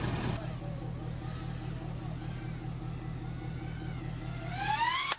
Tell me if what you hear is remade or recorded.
recorded